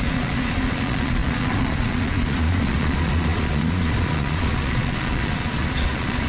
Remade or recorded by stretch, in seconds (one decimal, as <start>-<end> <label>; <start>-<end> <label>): 0.0-6.3 remade